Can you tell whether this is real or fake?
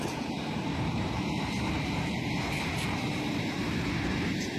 real